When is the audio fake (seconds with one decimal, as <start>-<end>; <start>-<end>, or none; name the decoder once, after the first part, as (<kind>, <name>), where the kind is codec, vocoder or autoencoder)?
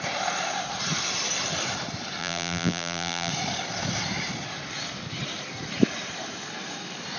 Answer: 2.2-3.3 (vocoder, BigVGAN v2)